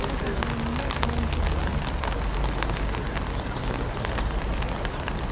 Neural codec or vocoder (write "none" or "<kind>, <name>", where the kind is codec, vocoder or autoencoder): none